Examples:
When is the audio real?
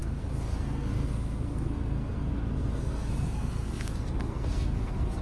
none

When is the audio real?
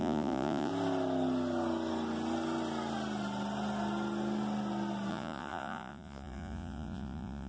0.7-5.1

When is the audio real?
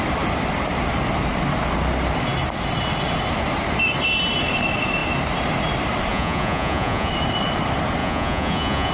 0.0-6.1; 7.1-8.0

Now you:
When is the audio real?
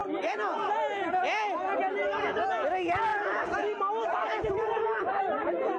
0.9-3.1; 5.2-5.8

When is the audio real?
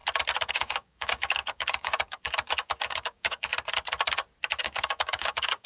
0.0-0.5; 3.5-4.6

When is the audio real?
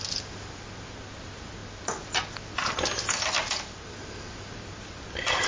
0.0-5.5